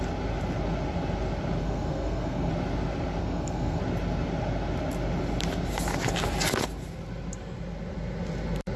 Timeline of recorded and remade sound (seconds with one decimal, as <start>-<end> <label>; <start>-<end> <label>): 0.0-1.6 recorded; 1.6-2.5 remade; 2.5-3.2 recorded; 3.2-3.8 remade; 3.8-8.8 recorded